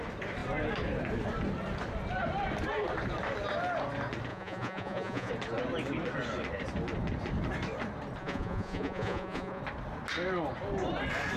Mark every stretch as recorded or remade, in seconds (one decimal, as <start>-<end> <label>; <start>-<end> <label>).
0.0-4.3 recorded; 4.3-5.3 remade; 5.3-8.2 recorded; 8.2-9.6 remade; 9.6-11.4 recorded